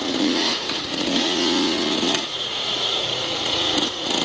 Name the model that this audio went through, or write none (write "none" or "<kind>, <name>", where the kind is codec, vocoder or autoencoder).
vocoder, Vocos